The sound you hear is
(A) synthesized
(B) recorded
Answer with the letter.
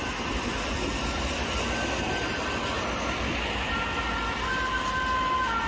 B